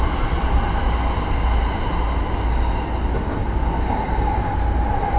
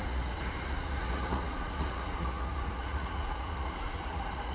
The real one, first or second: first